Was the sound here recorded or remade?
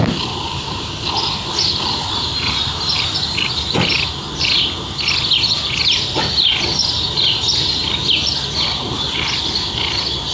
recorded